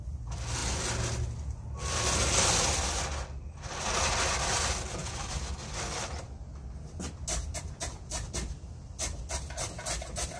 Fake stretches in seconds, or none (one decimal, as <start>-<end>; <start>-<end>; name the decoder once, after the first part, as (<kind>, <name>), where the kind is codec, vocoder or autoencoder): none